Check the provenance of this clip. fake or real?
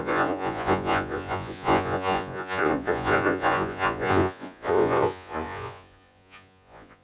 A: fake